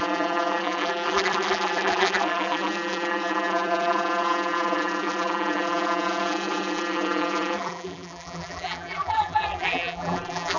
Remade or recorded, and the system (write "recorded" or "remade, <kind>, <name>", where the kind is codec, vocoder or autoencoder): remade, vocoder, BigVGAN v2